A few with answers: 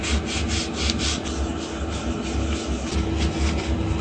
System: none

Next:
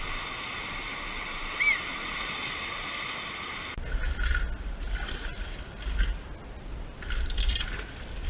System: none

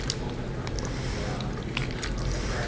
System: none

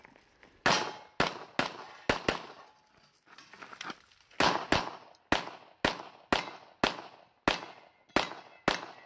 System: none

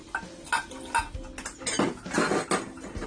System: none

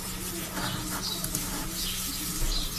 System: none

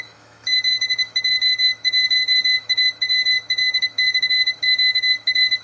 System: autoencoder, DAC-VAE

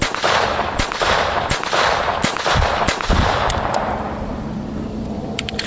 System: vocoder, BigVGAN v2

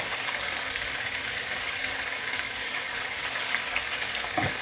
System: codec, DAC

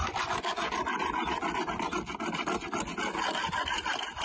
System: none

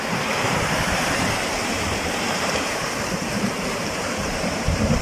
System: vocoder, BigVGAN v2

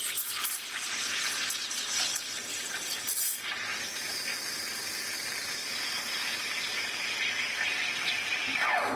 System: none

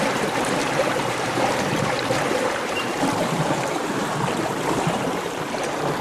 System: vocoder, BigVGAN v2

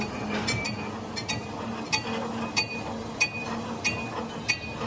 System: none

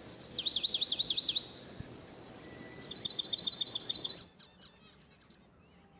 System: none